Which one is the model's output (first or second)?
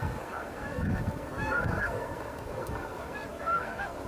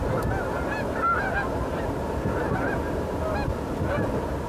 first